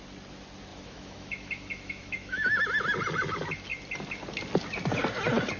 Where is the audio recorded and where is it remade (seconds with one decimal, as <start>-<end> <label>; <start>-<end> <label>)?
0.0-0.7 recorded; 0.7-2.6 remade; 2.6-5.6 recorded